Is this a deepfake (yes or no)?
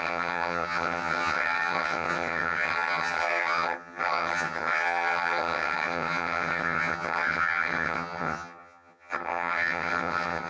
yes